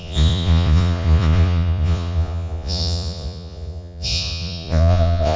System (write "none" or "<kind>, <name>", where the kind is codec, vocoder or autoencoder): vocoder, Vocos